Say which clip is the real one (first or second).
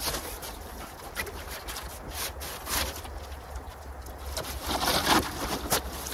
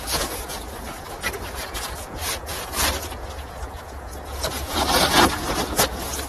first